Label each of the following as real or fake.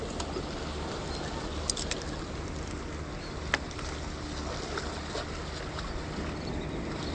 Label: real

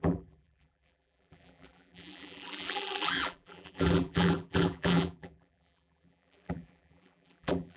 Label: fake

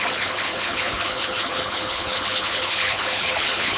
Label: fake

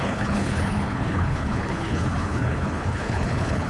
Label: fake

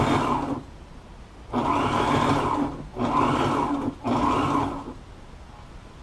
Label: real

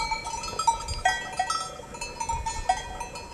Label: real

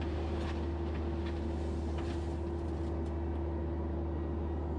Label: real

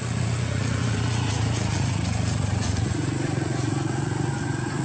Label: fake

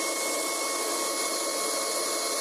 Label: real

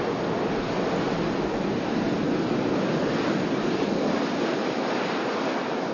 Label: real